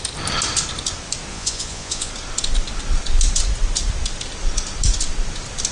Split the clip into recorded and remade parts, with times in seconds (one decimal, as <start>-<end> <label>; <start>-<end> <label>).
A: 0.0-1.3 recorded; 1.3-2.1 remade; 2.1-5.7 recorded